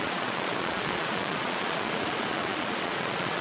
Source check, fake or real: fake